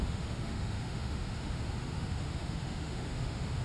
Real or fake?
fake